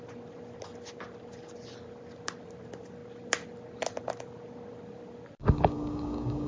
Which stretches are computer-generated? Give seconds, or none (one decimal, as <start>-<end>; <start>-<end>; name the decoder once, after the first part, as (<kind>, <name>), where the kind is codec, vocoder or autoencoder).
5.4-6.5 (codec, DAC)